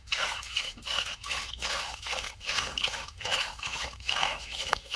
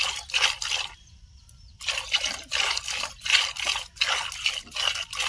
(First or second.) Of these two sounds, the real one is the second